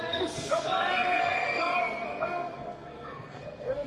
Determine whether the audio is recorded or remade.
remade